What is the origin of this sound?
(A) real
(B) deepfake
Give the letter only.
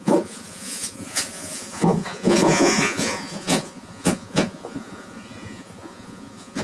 B